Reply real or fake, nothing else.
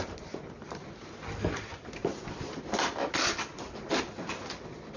real